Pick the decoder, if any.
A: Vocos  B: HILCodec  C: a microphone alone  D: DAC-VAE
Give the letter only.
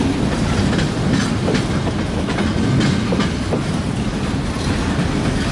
C